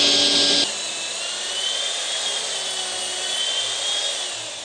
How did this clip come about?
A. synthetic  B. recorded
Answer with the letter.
B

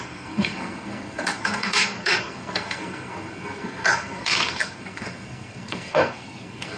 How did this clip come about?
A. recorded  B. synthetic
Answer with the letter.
B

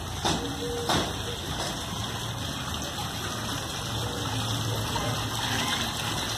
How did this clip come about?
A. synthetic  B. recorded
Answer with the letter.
B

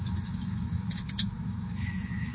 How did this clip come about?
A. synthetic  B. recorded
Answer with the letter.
A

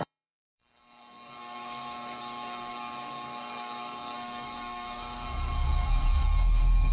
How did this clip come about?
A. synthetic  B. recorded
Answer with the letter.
A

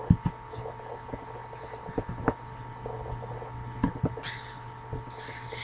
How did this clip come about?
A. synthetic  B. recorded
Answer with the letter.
B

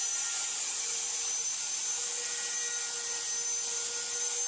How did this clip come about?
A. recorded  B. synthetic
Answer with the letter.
A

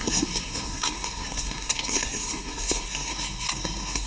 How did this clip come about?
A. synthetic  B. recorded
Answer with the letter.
A